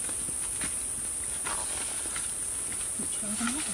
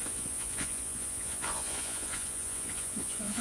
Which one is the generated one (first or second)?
second